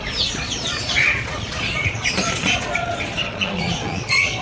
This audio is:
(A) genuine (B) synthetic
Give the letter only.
B